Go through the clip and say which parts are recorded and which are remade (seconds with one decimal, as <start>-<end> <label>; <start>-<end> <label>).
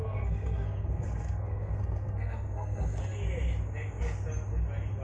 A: 0.0-3.0 remade; 3.0-5.0 recorded